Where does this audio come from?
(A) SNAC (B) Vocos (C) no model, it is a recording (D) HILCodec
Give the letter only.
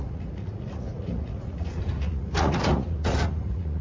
B